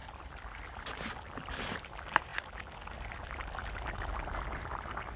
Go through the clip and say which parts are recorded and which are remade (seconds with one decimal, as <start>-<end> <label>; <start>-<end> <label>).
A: 0.0-5.2 recorded

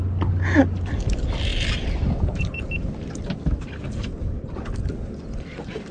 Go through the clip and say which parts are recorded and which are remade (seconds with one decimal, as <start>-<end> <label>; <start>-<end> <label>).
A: 0.0-5.9 recorded